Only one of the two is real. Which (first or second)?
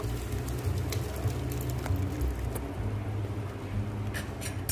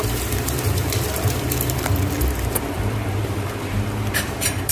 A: first